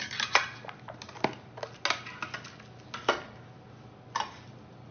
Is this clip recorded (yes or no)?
yes